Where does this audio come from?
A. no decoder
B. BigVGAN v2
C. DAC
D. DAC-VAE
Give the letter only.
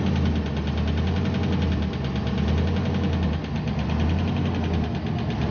A